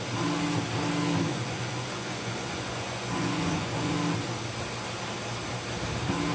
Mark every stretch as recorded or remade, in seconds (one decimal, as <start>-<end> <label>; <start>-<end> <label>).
0.0-1.3 recorded; 1.3-3.9 remade; 3.9-6.3 recorded